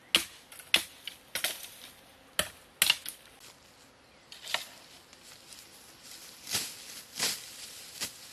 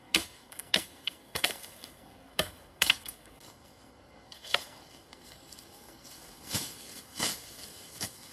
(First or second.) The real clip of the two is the first